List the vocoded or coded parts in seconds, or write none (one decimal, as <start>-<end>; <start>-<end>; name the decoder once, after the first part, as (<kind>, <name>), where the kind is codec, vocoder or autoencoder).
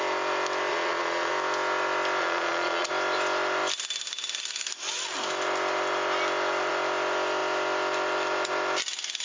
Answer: 0.7-1.3 (vocoder, Vocos); 2.2-2.9